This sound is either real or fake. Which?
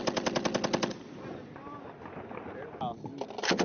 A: real